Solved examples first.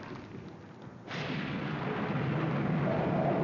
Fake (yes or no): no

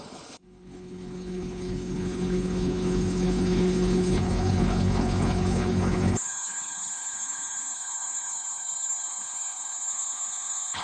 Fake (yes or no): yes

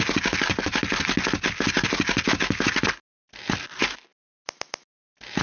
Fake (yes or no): no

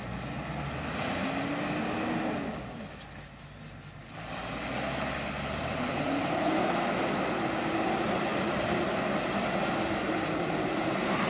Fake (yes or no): no